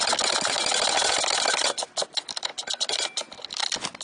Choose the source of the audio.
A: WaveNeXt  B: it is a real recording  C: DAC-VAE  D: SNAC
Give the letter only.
B